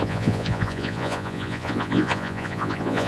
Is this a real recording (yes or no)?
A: no